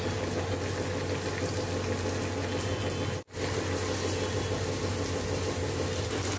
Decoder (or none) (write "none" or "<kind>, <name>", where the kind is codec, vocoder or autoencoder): none